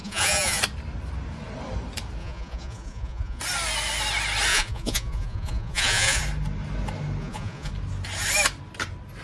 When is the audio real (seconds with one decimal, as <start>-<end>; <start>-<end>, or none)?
0.6-2.2; 3.4-4.5; 6.2-7.2; 7.7-9.2